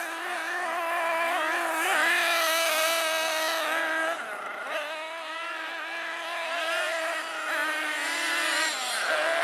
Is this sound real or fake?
real